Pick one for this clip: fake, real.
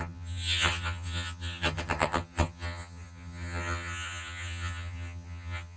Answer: fake